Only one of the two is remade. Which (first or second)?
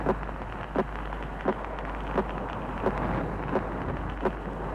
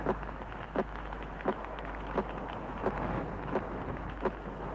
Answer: second